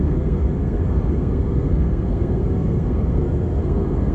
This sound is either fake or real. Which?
fake